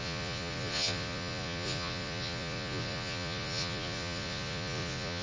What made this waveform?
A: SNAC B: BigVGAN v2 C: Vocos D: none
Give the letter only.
C